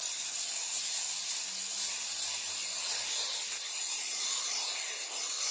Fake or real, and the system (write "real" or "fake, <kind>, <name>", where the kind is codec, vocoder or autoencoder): real